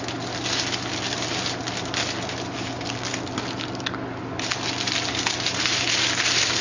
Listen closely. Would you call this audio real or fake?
real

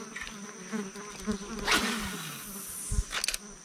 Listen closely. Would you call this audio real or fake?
real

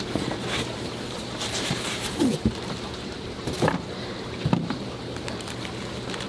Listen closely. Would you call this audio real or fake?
fake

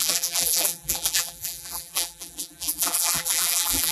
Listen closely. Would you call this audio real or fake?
fake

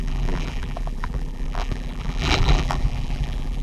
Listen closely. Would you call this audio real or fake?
fake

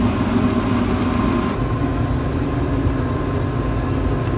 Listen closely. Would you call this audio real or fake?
real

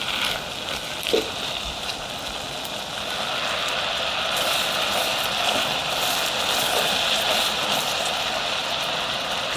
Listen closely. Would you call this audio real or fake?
real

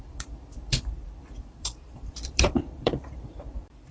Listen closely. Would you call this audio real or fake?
fake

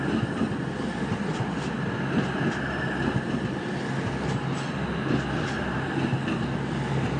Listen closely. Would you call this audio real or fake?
real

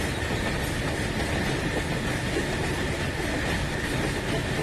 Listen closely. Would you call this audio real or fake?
real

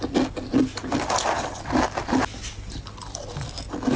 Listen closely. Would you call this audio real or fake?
real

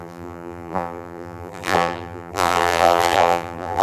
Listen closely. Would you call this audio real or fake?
fake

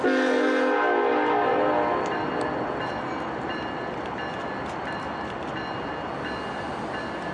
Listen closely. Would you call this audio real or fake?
real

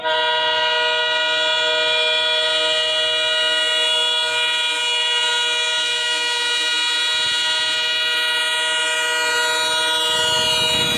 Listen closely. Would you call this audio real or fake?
real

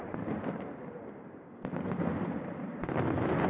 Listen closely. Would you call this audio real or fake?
fake